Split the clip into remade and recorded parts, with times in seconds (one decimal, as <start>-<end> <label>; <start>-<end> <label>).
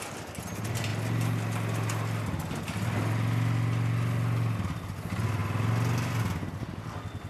0.0-7.3 recorded